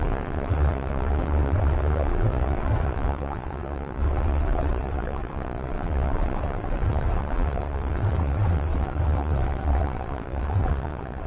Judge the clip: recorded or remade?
remade